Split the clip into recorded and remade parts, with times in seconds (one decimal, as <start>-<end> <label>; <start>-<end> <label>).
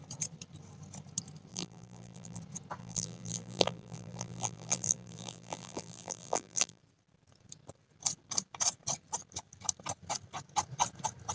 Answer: 0.0-1.5 recorded; 1.5-2.4 remade; 2.4-2.8 recorded; 2.8-6.8 remade; 6.8-11.3 recorded